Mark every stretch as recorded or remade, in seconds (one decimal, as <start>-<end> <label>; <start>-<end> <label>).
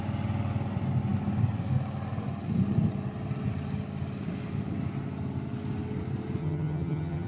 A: 0.0-6.4 recorded; 6.4-7.3 remade